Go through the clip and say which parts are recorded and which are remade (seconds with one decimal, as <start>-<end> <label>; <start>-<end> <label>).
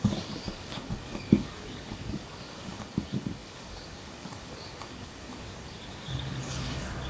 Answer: 0.0-7.1 remade